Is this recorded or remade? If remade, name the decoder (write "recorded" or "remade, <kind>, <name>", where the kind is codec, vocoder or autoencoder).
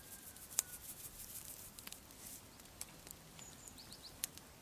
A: recorded